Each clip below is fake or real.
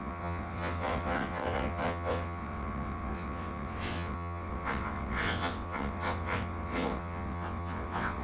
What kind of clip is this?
fake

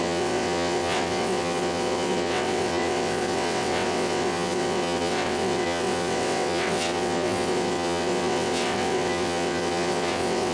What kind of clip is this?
fake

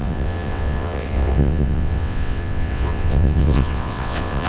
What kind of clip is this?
fake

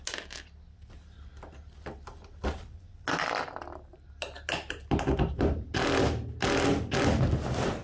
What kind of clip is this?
real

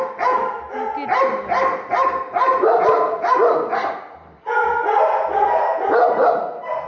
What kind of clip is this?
real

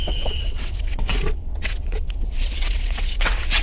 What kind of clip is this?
fake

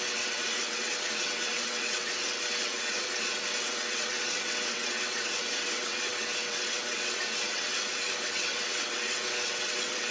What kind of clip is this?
fake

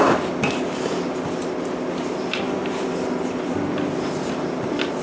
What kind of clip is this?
real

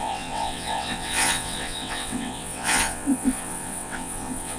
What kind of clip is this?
fake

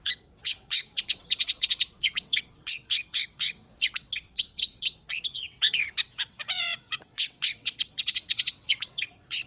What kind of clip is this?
fake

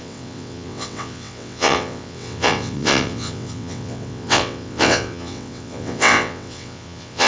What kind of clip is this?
fake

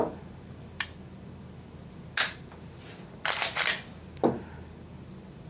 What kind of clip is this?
real